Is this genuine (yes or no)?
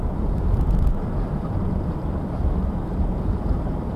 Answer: no